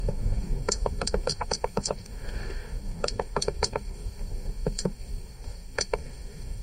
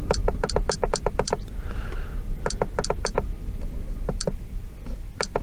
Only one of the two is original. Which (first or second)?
second